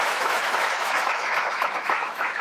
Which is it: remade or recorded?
remade